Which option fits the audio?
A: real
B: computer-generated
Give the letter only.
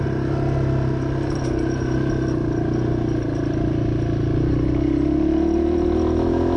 A